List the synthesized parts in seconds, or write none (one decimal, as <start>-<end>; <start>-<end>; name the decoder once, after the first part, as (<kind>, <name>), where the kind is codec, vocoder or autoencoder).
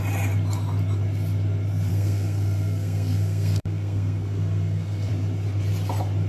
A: 1.9-5.1 (codec, SNAC)